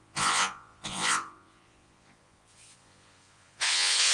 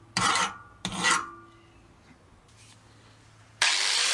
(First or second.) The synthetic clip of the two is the first